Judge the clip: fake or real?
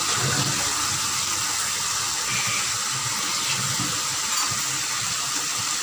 real